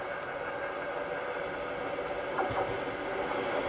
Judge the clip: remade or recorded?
recorded